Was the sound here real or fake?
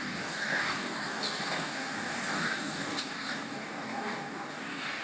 fake